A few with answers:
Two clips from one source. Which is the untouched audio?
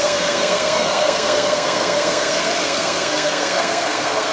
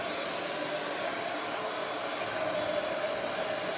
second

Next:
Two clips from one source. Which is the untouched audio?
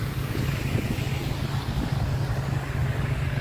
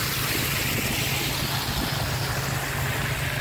second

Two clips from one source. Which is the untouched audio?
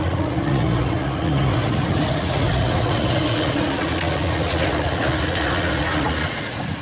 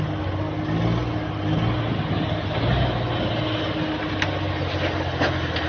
second